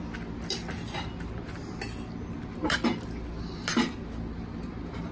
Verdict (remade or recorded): recorded